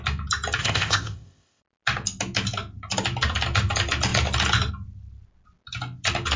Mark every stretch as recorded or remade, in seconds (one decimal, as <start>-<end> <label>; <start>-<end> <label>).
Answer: 0.0-0.6 recorded; 0.6-1.6 remade; 1.6-6.4 recorded